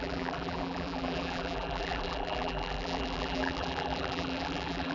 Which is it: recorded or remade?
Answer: remade